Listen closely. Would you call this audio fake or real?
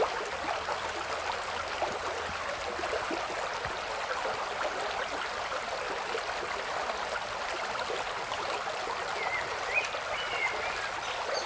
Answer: real